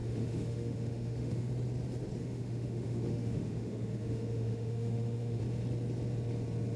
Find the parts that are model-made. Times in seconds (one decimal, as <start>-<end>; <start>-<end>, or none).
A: 0.0-1.5; 2.2-5.4

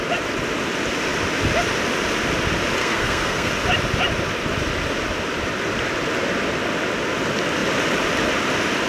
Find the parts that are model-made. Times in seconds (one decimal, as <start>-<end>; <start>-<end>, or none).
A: 2.8-3.5

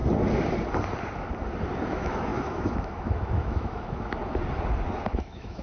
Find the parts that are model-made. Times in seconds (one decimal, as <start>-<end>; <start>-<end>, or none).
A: 1.9-4.2; 5.1-5.6